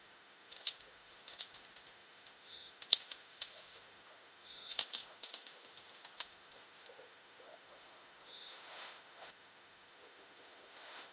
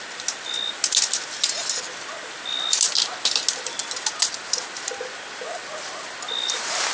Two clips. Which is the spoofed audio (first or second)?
first